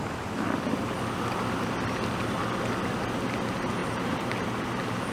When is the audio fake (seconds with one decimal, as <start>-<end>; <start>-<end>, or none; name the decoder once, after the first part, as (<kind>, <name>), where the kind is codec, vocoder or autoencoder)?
3.8-5.1 (vocoder, BigVGAN v2)